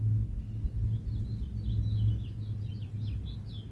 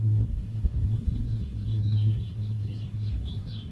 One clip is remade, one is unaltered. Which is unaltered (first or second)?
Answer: first